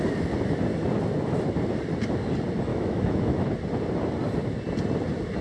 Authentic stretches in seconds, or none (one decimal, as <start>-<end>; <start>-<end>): 0.0-2.7; 3.5-5.4